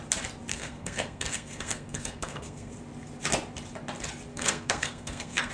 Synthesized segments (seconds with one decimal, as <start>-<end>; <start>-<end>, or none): 0.5-2.7; 4.3-5.5